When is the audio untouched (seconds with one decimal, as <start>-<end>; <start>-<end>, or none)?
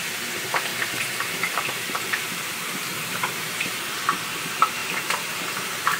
0.0-0.7; 4.2-4.8